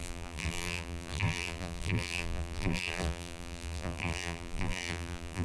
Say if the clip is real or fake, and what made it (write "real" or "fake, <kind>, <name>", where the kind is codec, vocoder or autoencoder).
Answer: fake, vocoder, BigVGAN v2